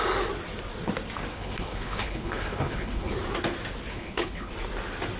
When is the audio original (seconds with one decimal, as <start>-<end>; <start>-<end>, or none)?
0.0-1.3; 3.1-3.9; 4.5-5.2